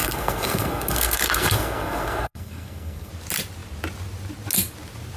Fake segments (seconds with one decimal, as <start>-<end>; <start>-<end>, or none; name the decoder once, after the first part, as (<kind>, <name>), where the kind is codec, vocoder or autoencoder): 0.0-3.1 (codec, SNAC)